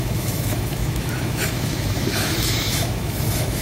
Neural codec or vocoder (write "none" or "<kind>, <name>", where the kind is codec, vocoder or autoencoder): autoencoder, DAC-VAE